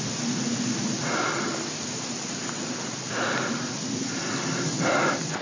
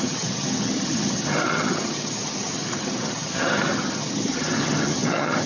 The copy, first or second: second